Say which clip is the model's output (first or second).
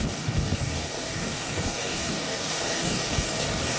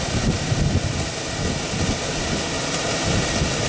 first